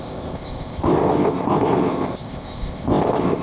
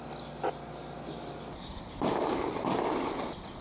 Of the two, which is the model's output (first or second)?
first